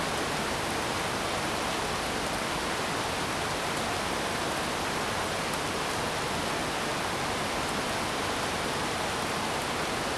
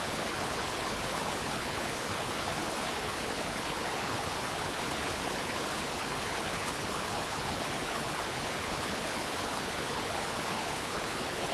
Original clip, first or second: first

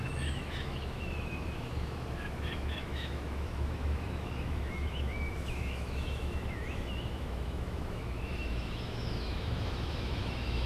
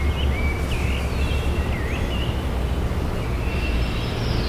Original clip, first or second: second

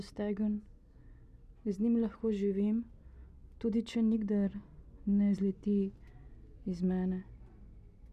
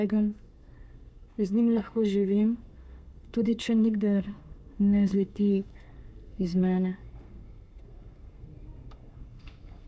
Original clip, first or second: first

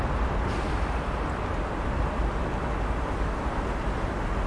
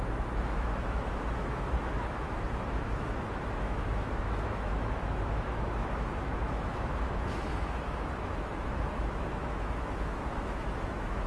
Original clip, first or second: first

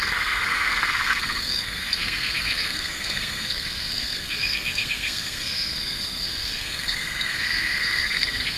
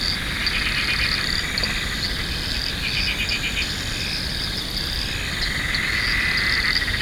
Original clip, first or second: second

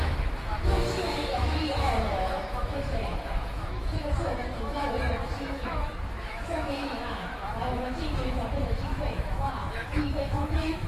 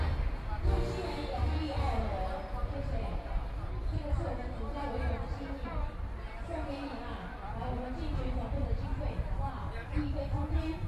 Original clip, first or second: second